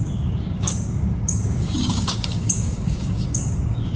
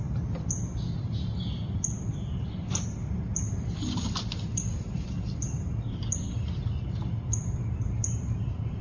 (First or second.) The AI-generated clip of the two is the first